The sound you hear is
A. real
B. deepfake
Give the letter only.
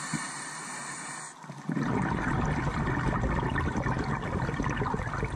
A